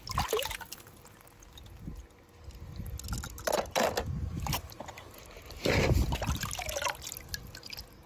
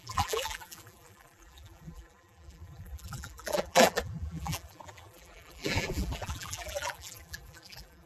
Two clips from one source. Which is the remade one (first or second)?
second